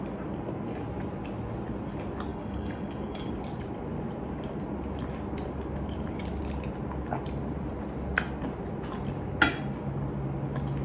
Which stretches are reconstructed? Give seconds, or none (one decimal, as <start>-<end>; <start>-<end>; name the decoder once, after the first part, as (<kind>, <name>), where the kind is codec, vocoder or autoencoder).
2.3-3.3 (codec, DAC)